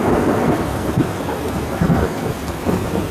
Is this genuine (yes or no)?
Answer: no